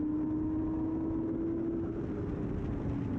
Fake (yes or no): no